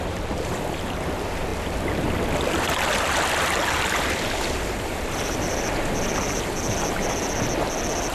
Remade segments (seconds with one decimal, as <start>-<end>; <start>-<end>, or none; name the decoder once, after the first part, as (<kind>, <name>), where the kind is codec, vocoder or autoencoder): none